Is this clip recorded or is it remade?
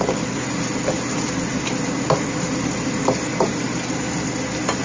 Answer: recorded